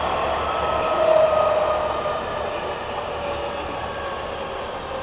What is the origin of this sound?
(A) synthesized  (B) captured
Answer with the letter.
B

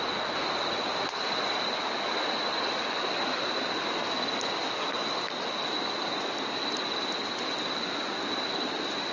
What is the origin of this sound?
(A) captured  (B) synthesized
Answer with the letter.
A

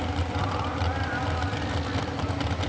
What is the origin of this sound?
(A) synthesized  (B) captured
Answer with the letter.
B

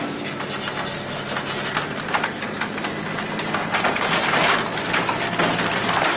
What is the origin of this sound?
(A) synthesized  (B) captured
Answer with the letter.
B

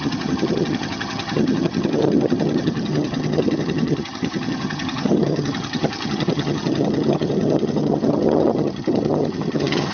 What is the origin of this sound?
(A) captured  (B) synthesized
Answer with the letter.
B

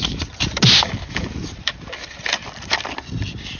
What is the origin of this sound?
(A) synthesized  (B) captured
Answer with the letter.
B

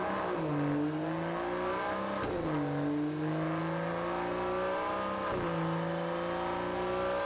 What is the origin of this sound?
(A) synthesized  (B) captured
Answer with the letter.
B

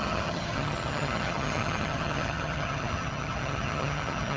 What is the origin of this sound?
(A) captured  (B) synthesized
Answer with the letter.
B